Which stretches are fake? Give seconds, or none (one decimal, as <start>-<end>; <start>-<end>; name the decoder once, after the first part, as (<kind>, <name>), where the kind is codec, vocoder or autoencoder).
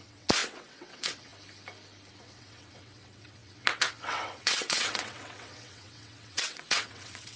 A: 0.0-1.3 (vocoder, WaveNeXt); 2.1-7.4